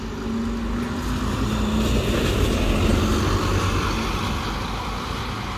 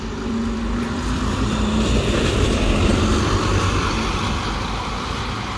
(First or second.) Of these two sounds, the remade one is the second